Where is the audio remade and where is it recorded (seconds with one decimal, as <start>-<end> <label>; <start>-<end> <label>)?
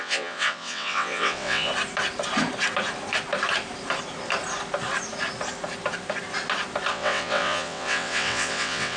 0.0-1.7 remade; 1.7-6.9 recorded; 6.9-9.0 remade